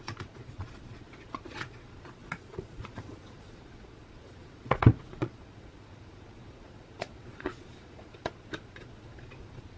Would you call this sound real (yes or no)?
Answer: no